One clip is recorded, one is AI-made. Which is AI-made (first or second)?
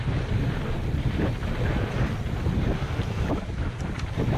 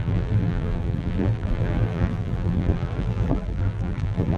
second